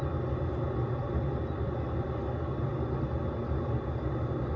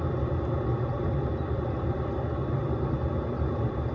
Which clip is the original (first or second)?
first